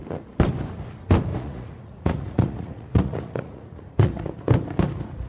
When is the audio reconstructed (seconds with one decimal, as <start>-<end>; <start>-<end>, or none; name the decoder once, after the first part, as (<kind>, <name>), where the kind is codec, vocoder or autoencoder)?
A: 1.3-4.5 (vocoder, Vocos)